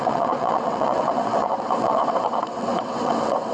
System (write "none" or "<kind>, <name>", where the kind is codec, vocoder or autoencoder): vocoder, WaveNeXt